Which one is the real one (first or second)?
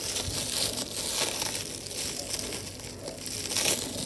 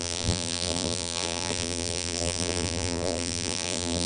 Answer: first